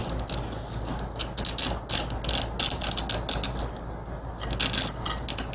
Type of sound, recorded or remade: recorded